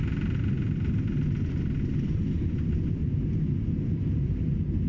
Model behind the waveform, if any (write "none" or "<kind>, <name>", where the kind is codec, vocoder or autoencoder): none